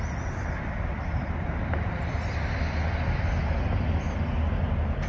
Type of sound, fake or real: real